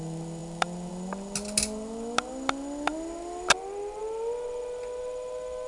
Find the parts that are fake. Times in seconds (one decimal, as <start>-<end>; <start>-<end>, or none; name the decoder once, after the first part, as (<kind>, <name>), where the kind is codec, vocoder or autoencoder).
none